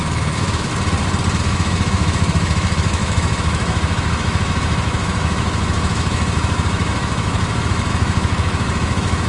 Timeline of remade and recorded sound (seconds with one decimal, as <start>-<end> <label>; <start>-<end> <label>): 0.0-0.7 remade; 0.7-1.4 recorded; 1.4-9.3 remade